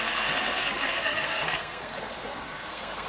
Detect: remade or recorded remade